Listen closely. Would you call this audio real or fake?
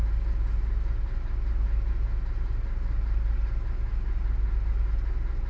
real